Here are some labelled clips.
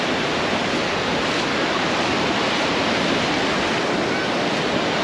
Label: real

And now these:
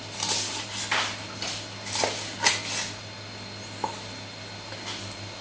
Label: real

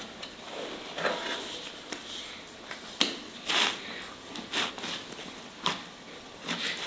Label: real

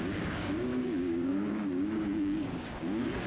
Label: fake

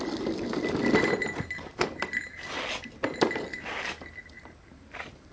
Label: real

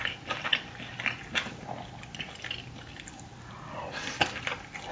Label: real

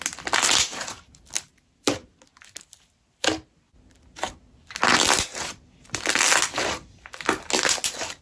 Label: real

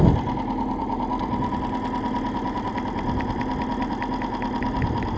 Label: real